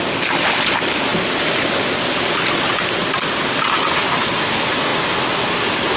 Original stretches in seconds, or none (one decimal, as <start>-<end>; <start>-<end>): 0.0-6.0